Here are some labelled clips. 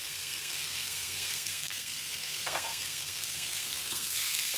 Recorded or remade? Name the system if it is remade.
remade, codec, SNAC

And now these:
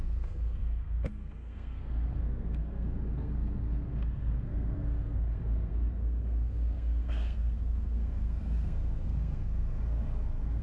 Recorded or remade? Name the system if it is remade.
remade, codec, SNAC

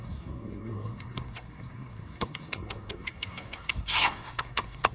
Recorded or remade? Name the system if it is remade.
remade, codec, SNAC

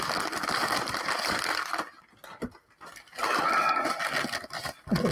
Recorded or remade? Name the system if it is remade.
recorded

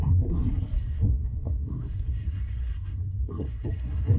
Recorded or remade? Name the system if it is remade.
remade, codec, SNAC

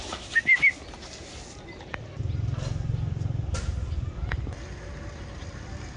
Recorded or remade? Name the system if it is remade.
recorded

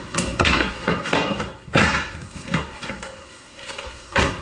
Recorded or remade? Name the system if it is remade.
remade, codec, SNAC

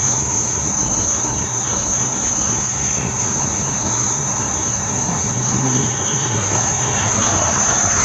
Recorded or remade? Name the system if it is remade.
remade, codec, SNAC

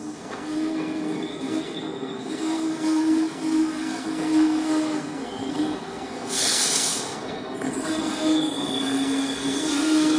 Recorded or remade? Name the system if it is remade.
remade, codec, SNAC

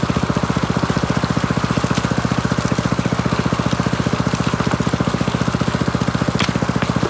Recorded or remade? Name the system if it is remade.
recorded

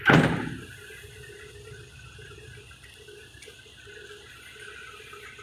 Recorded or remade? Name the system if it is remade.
recorded